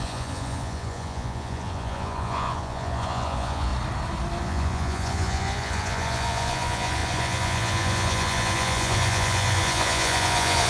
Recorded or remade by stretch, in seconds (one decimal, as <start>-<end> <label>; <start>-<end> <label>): 0.0-3.7 remade; 3.7-4.4 recorded; 4.4-10.7 remade